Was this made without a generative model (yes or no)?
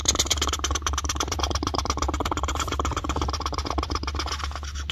yes